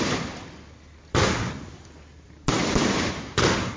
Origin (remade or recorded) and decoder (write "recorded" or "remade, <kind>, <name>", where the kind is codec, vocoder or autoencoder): remade, vocoder, BigVGAN v2